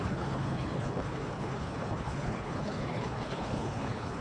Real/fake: fake